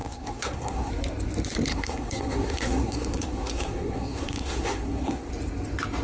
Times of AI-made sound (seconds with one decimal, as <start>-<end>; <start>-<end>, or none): 0.0-0.9; 1.7-5.3